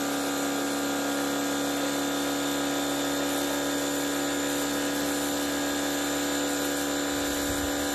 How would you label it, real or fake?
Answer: real